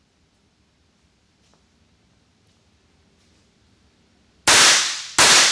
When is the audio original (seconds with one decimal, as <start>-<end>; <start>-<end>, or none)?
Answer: 0.0-5.5